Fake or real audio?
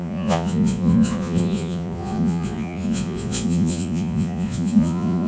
fake